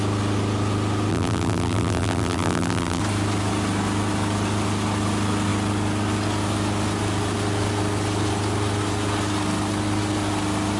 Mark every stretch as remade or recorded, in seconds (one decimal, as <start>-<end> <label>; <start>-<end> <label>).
0.0-1.1 recorded; 1.1-3.0 remade; 3.0-10.8 recorded